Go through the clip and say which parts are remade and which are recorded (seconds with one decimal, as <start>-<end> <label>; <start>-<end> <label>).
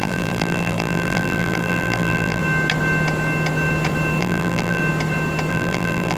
0.0-2.4 remade; 2.4-4.2 recorded; 4.2-4.8 remade; 4.8-5.5 recorded; 5.5-6.2 remade